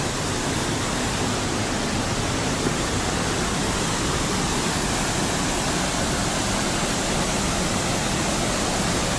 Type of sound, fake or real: real